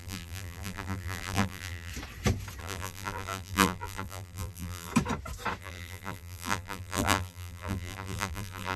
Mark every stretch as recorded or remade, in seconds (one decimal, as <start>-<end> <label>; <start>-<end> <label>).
0.0-1.9 remade; 1.9-2.6 recorded; 2.6-4.9 remade; 4.9-5.6 recorded; 5.6-8.8 remade